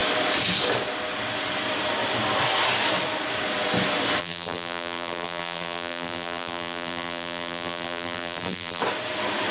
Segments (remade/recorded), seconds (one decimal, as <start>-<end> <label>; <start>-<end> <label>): 0.0-4.2 recorded; 4.2-8.8 remade; 8.8-9.5 recorded